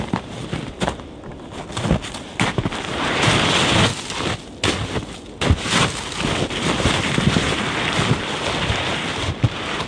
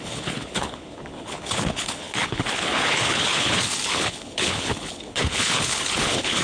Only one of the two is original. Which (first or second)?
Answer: first